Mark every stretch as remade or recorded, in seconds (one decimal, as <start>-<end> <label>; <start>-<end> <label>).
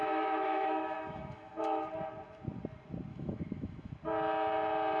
0.0-1.9 remade; 1.9-3.1 recorded; 3.1-3.9 remade; 3.9-5.0 recorded